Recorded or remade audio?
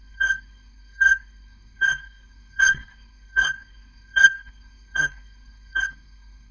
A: remade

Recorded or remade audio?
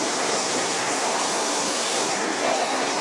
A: remade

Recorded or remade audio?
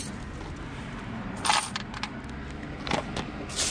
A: recorded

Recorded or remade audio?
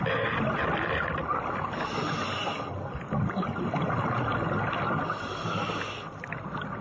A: recorded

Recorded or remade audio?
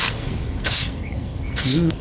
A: remade